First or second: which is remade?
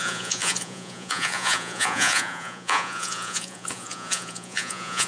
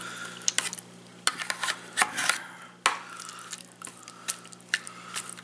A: first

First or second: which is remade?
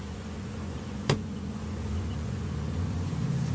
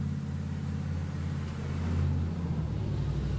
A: first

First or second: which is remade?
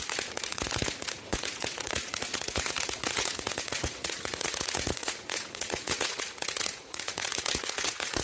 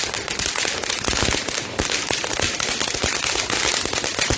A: first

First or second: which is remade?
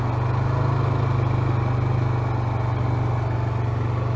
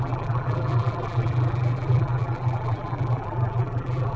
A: second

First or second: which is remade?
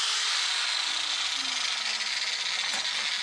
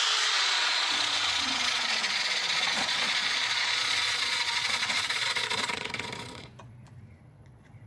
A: second